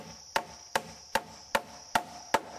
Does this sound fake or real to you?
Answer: real